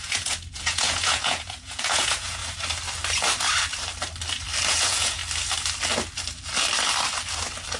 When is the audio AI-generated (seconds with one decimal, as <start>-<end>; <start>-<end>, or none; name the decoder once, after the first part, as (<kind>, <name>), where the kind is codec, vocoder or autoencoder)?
0.0-2.4 (vocoder, Vocos); 4.7-5.2